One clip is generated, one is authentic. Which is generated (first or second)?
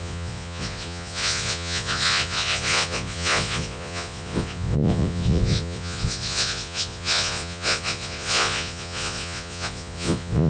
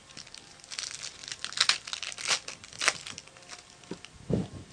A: first